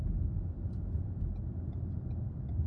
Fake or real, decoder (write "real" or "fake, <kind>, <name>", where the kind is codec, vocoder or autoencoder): real